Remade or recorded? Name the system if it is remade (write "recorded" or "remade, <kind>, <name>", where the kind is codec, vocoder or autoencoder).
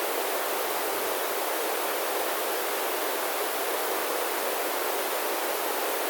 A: recorded